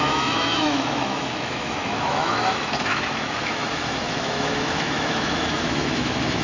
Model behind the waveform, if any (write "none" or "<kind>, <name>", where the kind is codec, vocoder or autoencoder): autoencoder, DAC-VAE